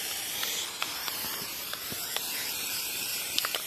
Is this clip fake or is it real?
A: fake